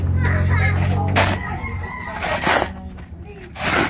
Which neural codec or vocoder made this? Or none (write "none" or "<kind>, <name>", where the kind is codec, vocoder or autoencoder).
none